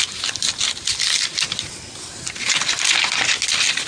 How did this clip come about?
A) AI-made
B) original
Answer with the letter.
B